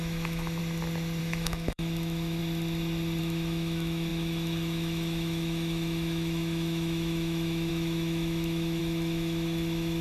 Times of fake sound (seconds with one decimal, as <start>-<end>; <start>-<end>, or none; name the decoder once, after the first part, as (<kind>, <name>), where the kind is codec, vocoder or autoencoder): 0.0-0.6 (autoencoder, DAC-VAE); 1.2-2.4; 3.2-10.0